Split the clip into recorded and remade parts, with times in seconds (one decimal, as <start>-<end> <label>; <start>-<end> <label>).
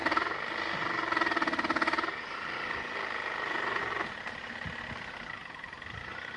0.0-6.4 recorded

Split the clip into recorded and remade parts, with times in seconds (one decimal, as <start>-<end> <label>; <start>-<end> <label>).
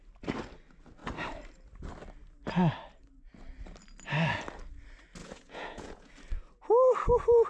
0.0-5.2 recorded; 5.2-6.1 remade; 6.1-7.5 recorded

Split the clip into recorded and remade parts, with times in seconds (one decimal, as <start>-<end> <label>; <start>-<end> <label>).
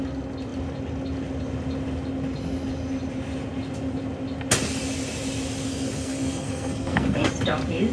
0.0-5.7 recorded; 5.7-7.3 remade; 7.3-7.9 recorded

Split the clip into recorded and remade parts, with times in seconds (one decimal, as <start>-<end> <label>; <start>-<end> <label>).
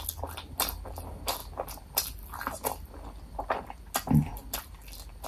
0.0-5.3 recorded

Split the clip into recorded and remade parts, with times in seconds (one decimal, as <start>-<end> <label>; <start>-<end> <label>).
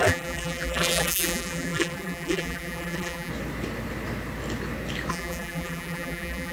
0.0-3.3 remade; 3.3-5.1 recorded; 5.1-6.5 remade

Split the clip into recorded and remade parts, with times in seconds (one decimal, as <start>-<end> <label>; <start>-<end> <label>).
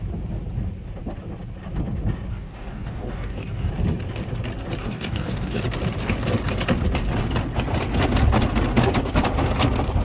0.0-2.3 recorded; 2.3-3.7 remade; 3.7-4.8 recorded; 4.8-5.6 remade; 5.6-10.0 recorded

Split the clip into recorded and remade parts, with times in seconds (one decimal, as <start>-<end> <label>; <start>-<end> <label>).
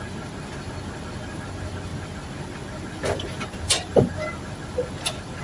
0.0-5.4 recorded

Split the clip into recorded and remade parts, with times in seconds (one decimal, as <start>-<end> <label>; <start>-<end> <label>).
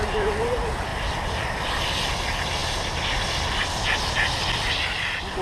0.0-5.4 recorded